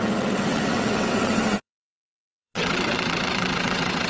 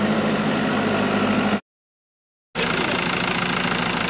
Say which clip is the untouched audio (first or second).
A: second